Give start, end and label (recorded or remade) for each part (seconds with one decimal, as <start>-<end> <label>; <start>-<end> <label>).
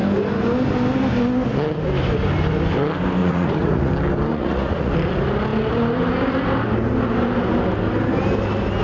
0.0-3.2 recorded; 3.2-3.9 remade; 3.9-4.3 recorded; 4.3-4.9 remade; 4.9-8.8 recorded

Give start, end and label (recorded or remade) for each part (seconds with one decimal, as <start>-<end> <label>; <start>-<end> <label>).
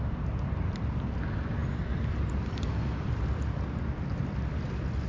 0.0-5.1 recorded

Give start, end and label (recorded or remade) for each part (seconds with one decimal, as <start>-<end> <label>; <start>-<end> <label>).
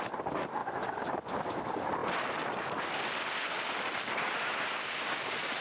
0.0-5.6 recorded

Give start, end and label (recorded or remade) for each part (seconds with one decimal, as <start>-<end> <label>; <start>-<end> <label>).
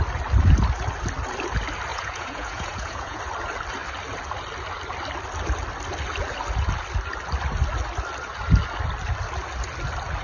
0.0-1.9 recorded; 1.9-3.2 remade; 3.2-10.2 recorded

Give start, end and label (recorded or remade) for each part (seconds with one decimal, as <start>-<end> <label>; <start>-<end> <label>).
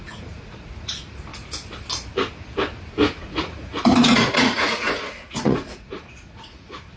0.0-1.3 remade; 1.3-3.2 recorded; 3.2-7.0 remade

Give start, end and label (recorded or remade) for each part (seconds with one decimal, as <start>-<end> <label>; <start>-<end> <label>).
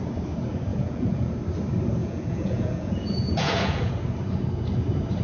0.0-0.7 recorded; 0.7-1.3 remade; 1.3-2.0 recorded; 2.0-3.9 remade; 3.9-5.2 recorded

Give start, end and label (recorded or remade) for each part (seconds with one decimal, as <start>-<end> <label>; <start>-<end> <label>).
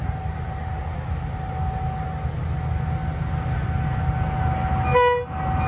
0.0-5.7 recorded